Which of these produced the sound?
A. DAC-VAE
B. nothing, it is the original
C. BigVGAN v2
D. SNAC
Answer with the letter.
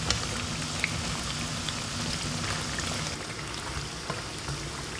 B